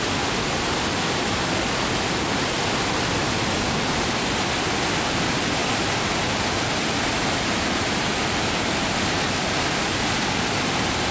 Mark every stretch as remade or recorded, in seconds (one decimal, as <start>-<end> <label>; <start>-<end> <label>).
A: 0.0-11.1 recorded